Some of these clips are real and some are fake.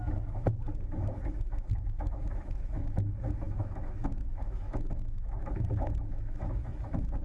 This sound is fake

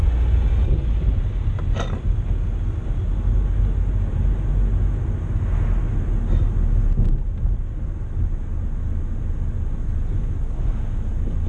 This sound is real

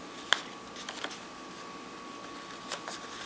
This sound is real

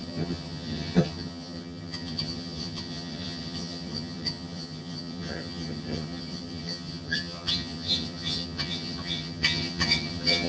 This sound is fake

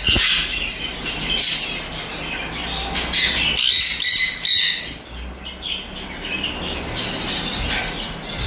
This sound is real